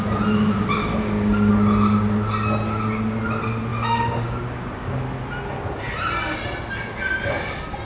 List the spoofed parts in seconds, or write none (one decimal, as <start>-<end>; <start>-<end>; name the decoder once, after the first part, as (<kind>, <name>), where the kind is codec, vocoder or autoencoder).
0.8-1.5 (codec, DAC); 3.7-5.0